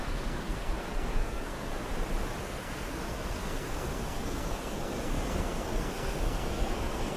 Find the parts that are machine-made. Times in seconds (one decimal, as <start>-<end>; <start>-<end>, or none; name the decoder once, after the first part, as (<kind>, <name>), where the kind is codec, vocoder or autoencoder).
0.0-1.7 (codec, SNAC); 2.4-7.2